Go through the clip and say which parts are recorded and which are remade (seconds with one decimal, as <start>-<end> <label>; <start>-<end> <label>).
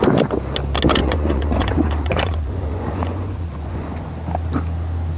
0.0-1.0 recorded; 1.0-4.1 remade; 4.1-5.2 recorded